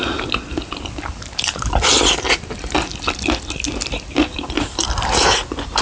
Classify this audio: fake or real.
real